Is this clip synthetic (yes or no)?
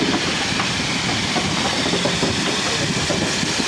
no